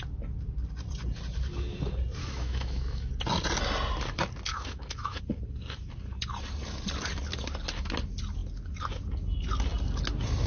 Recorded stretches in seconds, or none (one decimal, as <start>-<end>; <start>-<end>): 0.0-2.2; 3.1-4.5; 5.2-10.5